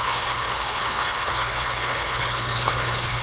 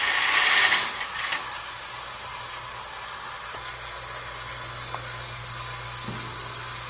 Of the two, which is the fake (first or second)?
first